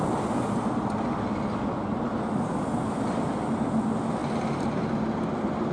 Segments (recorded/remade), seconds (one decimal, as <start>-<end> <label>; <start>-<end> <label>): 0.0-5.7 recorded